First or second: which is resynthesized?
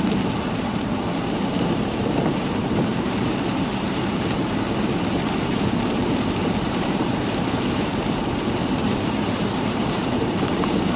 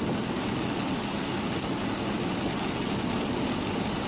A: first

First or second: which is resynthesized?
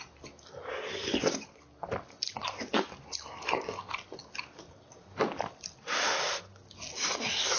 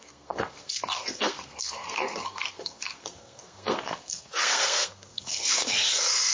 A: second